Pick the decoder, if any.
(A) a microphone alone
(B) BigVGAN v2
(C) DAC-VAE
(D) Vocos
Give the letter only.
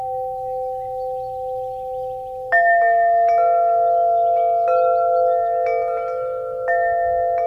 A